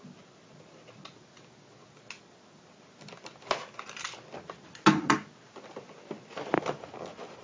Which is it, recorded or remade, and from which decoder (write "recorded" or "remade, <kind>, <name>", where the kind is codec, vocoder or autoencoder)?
recorded